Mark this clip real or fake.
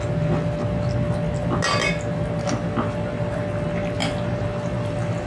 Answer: real